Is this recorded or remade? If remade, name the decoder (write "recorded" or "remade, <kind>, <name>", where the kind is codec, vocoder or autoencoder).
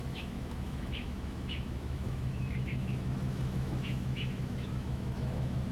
remade, autoencoder, DAC-VAE